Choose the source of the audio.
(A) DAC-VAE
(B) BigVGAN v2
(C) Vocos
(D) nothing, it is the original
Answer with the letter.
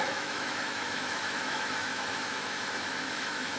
A